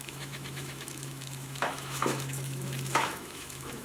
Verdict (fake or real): fake